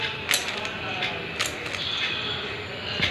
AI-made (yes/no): no